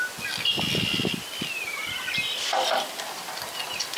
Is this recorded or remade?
recorded